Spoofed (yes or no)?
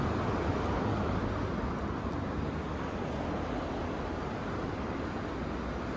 no